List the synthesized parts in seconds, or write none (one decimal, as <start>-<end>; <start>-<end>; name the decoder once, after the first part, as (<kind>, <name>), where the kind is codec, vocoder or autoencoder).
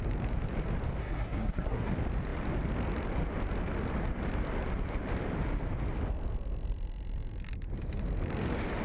1.0-1.9 (codec, SNAC)